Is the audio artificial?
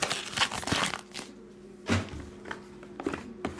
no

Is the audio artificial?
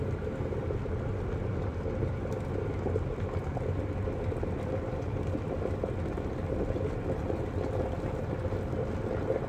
no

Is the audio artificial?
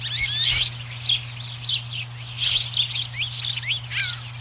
no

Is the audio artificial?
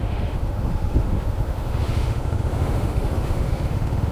yes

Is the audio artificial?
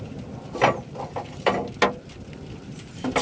no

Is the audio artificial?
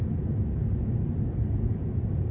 no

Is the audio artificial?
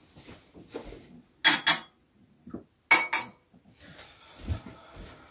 no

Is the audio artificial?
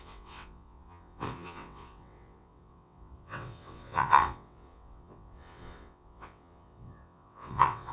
yes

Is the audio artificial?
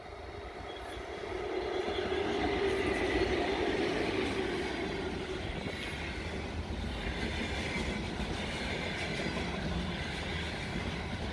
no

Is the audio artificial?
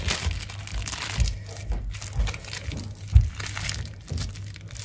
no